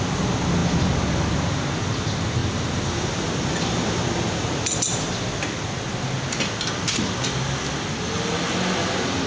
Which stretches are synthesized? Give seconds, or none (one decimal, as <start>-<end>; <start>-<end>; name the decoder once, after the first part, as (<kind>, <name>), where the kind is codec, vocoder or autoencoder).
none